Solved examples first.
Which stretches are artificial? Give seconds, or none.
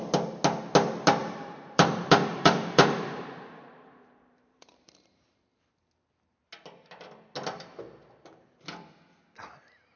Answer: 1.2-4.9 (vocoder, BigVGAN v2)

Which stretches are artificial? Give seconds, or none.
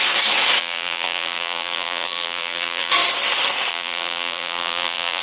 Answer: 0.6-2.9 (vocoder, BigVGAN v2); 3.7-5.2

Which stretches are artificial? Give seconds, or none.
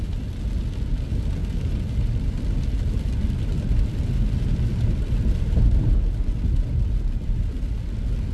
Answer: none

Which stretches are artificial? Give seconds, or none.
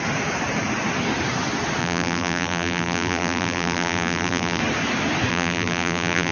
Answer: 1.8-4.6 (vocoder, BigVGAN v2); 5.3-6.3